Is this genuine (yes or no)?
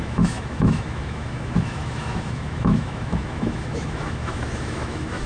no